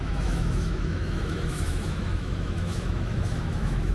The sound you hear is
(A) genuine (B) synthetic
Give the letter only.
B